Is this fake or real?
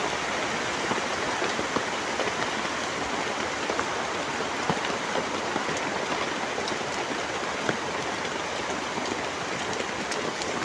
real